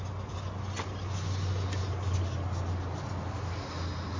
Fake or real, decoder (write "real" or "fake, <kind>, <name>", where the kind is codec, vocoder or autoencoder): real